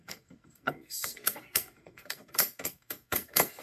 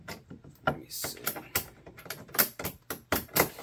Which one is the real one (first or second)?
second